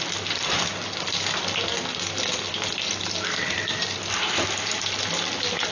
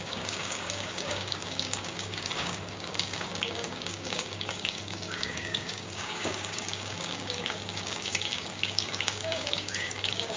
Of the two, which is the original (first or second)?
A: first